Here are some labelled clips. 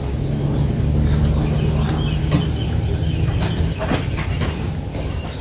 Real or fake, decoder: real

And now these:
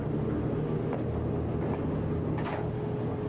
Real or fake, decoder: real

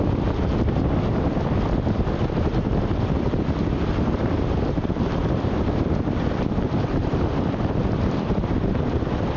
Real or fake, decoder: fake, vocoder, BigVGAN v2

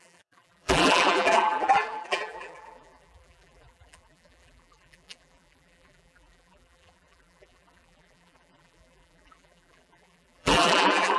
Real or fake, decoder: fake, vocoder, BigVGAN v2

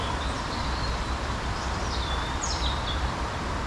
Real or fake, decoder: fake, vocoder, BigVGAN v2